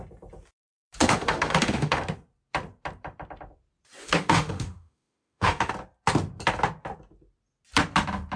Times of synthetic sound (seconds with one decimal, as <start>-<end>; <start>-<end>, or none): 1.0-2.0; 4.0-5.7